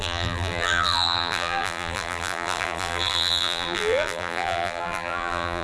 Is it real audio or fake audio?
fake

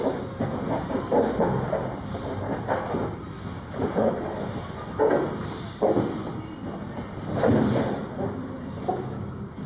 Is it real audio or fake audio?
real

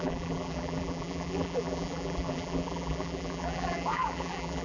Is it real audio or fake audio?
fake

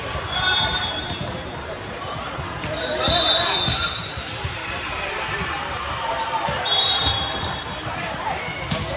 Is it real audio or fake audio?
fake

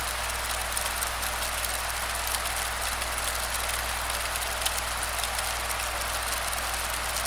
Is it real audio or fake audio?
real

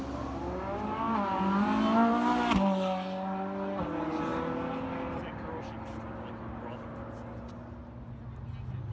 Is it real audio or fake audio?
real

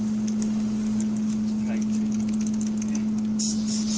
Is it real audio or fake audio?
real